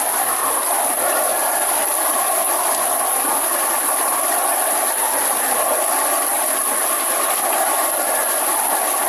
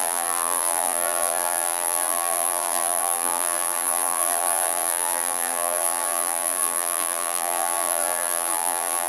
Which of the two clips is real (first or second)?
first